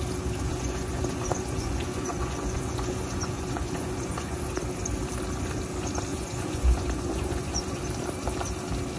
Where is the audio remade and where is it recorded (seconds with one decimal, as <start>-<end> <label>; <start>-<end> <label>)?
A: 0.0-0.5 recorded; 0.5-4.5 remade; 4.5-6.1 recorded; 6.1-7.8 remade; 7.8-9.0 recorded